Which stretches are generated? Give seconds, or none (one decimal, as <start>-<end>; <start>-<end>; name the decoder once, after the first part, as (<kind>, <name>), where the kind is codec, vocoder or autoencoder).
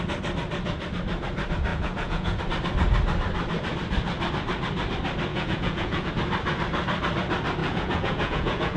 1.7-2.4 (vocoder, Vocos); 5.3-6.1; 7.6-8.8